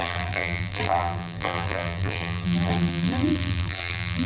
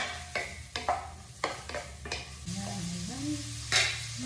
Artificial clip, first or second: first